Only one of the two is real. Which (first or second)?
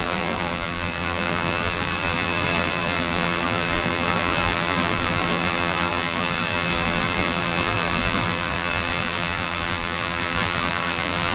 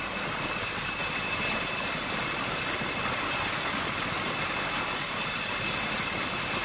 second